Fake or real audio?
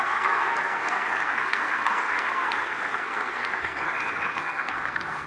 fake